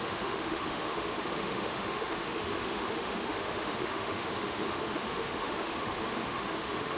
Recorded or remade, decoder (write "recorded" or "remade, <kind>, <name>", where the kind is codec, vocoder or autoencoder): remade, autoencoder, DAC-VAE